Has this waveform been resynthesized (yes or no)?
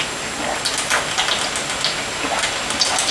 no